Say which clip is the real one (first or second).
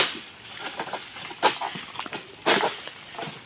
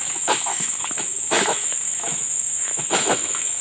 first